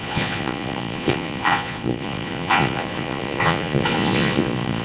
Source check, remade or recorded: remade